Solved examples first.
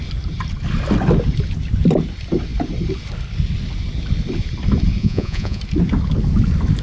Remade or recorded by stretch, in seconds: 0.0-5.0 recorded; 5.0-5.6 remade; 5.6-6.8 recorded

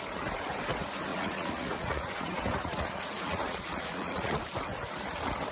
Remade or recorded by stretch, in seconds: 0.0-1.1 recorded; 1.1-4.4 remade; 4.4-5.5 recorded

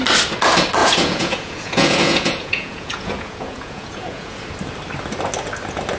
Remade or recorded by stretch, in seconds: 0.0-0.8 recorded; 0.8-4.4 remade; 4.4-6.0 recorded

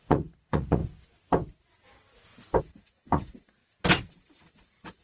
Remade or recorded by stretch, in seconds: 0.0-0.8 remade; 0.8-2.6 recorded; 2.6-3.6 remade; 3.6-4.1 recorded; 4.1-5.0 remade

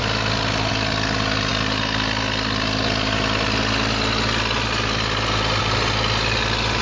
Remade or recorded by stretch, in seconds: 0.0-6.8 recorded

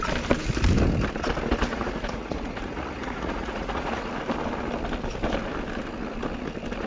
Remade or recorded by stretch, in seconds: 0.0-1.7 recorded; 1.7-4.0 remade; 4.0-6.9 recorded

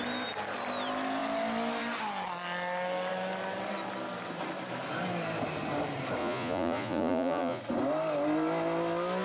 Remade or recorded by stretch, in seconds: 0.0-6.2 recorded; 6.2-7.6 remade; 7.6-9.2 recorded

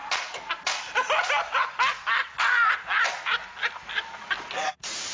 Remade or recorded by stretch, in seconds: 0.0-5.1 recorded